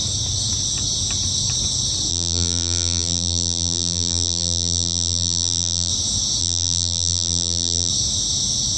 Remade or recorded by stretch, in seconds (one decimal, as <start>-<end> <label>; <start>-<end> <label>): 0.0-2.1 recorded; 2.1-5.9 remade; 5.9-6.4 recorded; 6.4-7.9 remade; 7.9-8.8 recorded